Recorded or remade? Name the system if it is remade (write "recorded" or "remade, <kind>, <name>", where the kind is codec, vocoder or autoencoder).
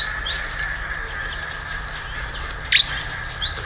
recorded